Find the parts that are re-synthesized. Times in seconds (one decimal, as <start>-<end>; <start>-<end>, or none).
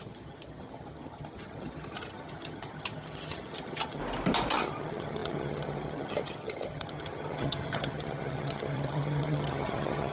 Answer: 0.0-4.0; 4.5-10.1